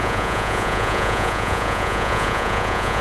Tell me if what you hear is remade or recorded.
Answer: remade